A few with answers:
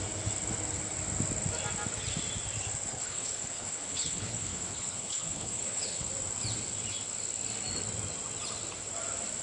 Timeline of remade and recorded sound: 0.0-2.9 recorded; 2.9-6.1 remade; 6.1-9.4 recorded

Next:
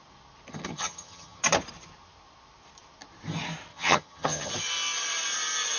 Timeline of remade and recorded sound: 0.0-0.5 recorded; 0.5-1.4 remade; 1.4-3.7 recorded; 3.7-4.5 remade; 4.5-5.8 recorded

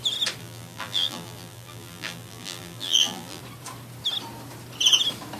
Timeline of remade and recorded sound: 0.0-0.4 recorded; 0.4-3.4 remade; 3.4-5.4 recorded

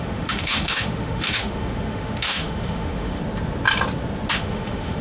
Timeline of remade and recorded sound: 0.0-3.2 remade; 3.2-4.3 recorded; 4.3-5.0 remade

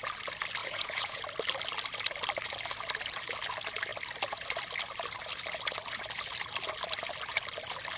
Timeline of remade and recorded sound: 0.0-0.6 recorded; 0.6-1.2 remade; 1.2-8.0 recorded

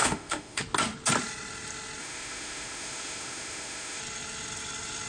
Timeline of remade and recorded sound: 0.0-0.6 remade; 0.6-2.0 recorded; 2.0-4.0 remade; 4.0-5.1 recorded

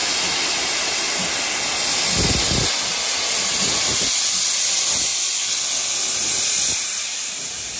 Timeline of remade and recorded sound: 0.0-5.1 recorded; 5.1-5.9 remade; 5.9-7.8 recorded